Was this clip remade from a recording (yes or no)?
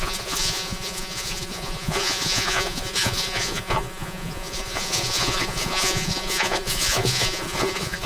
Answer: yes